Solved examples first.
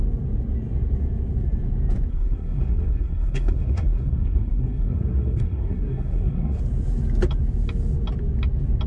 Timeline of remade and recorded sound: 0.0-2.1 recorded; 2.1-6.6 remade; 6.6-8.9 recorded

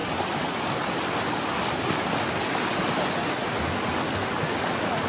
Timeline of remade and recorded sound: 0.0-5.1 recorded

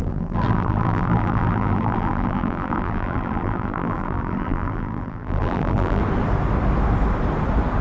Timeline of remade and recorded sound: 0.0-6.0 remade; 6.0-7.8 recorded

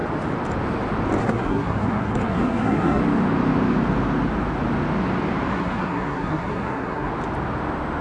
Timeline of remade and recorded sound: 0.0-1.2 recorded; 1.2-3.0 remade; 3.0-5.5 recorded; 5.5-7.1 remade; 7.1-8.0 recorded

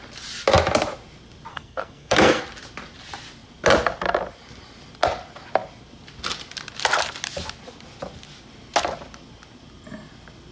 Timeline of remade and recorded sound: 0.0-1.5 recorded; 1.5-2.4 remade; 2.4-10.5 recorded